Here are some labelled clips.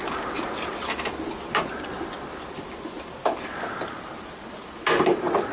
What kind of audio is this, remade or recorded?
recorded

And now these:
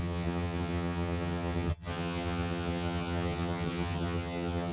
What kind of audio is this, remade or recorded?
remade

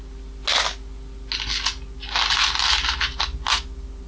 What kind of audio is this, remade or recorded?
recorded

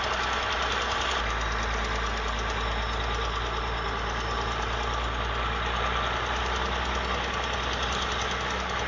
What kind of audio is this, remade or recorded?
recorded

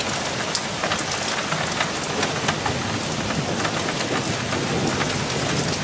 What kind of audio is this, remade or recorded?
recorded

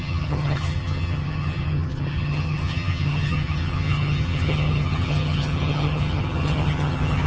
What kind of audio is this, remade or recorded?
remade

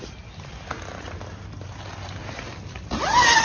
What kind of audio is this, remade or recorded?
recorded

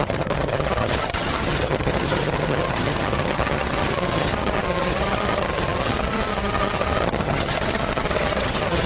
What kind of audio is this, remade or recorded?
remade